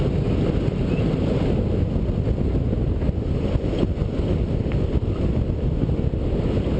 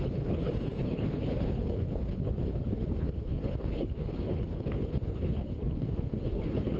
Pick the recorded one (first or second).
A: first